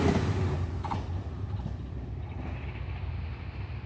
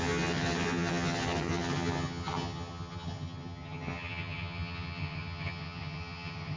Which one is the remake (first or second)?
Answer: second